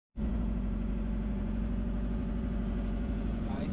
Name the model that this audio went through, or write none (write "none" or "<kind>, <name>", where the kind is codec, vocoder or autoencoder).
vocoder, Vocos